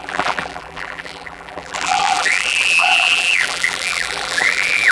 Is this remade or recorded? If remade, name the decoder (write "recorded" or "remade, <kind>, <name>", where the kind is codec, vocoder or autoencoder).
remade, vocoder, BigVGAN v2